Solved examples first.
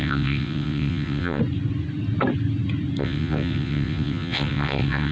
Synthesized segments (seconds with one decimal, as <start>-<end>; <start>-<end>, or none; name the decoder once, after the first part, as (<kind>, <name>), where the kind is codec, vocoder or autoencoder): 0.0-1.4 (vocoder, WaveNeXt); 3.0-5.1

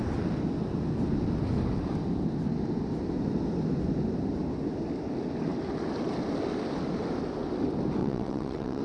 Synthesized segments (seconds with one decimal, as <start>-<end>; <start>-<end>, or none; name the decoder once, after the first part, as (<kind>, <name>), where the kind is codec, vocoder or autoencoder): 8.0-8.8 (vocoder, WaveNeXt)

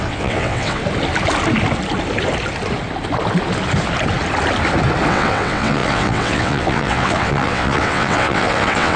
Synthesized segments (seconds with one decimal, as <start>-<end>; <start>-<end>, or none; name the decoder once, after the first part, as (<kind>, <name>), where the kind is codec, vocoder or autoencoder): 0.0-0.8 (vocoder, WaveNeXt); 5.1-9.0

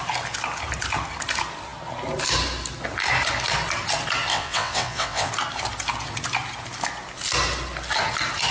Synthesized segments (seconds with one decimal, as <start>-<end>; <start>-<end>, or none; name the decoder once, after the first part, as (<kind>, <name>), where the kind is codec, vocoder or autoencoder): 4.3-5.3 (vocoder, WaveNeXt)

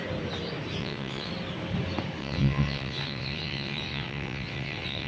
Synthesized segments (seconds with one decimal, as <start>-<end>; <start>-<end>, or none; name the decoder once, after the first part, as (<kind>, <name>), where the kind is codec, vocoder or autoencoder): 0.8-1.3 (vocoder, WaveNeXt); 2.2-5.1

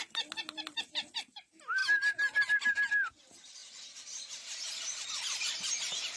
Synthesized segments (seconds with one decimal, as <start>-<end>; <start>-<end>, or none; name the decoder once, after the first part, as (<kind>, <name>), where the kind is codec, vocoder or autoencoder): none

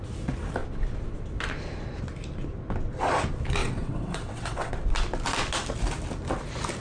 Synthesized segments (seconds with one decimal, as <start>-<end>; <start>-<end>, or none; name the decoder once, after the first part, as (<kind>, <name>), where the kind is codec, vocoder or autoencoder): 3.6-4.7 (vocoder, WaveNeXt)